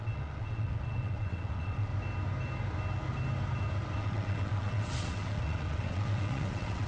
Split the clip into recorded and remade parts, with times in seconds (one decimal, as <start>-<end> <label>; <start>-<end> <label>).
0.0-1.9 remade; 1.9-4.0 recorded; 4.0-6.9 remade